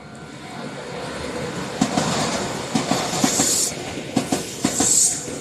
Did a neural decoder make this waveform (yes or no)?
no